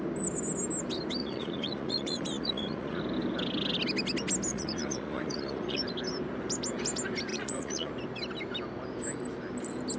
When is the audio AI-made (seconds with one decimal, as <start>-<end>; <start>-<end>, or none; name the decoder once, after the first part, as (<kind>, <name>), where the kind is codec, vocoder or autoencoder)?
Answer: 1.2-3.0 (vocoder, Vocos); 4.5-5.8; 7.3-7.9